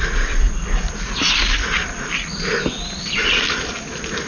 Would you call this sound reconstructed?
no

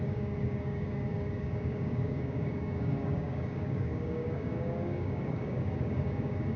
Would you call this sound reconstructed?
yes